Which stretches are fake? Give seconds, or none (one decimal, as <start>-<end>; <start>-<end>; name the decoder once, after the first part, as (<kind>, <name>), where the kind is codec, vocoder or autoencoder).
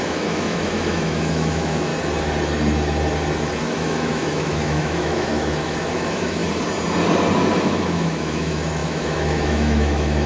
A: 0.0-1.9 (autoencoder, DAC-VAE); 3.6-6.4; 7.6-10.3